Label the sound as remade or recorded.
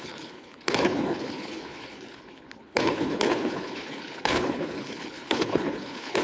remade